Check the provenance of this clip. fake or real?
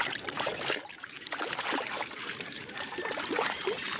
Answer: fake